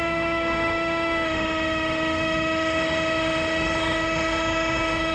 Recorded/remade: remade